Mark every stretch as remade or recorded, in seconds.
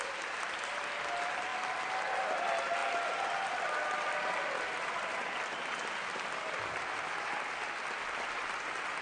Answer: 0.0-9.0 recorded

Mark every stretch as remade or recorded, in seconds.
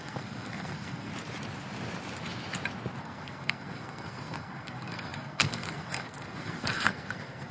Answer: 0.0-1.1 remade; 1.1-3.0 recorded; 3.0-7.5 remade